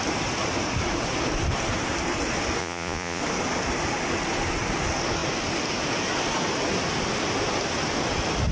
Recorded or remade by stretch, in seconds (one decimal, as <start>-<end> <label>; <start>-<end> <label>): 0.0-2.6 recorded; 2.6-3.2 remade; 3.2-8.5 recorded